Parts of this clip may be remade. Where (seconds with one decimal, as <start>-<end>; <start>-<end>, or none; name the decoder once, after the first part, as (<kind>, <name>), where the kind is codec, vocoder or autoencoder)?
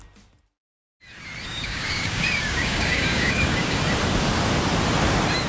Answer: 1.5-3.8 (codec, DAC)